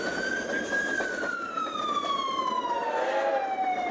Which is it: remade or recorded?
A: recorded